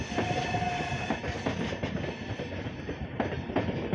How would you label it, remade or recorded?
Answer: recorded